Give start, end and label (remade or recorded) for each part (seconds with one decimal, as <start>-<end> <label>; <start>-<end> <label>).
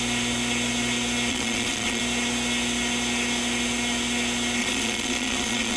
0.0-1.3 recorded; 1.3-2.0 remade; 2.0-4.6 recorded; 4.6-5.8 remade